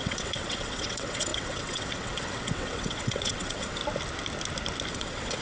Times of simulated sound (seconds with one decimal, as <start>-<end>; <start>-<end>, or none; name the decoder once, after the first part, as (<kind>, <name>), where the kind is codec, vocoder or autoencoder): 0.0-3.8 (vocoder, WaveNeXt); 4.9-5.4